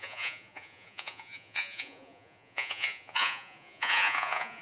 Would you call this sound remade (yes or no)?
yes